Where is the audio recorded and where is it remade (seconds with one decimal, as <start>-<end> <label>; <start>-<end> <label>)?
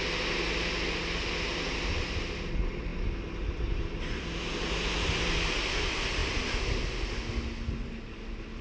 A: 0.0-8.6 recorded